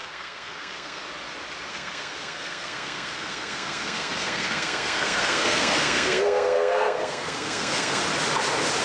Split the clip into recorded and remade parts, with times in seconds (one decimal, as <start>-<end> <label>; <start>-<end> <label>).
0.0-1.0 remade; 1.0-1.7 recorded; 1.7-8.0 remade; 8.0-8.8 recorded